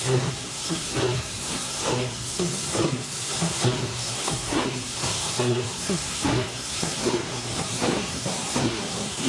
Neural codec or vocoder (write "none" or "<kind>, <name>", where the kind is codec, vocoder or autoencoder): codec, SNAC